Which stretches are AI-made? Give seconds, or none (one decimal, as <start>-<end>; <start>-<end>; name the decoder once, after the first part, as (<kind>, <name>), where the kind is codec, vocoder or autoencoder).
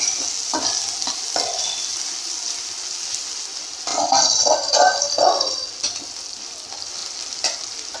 none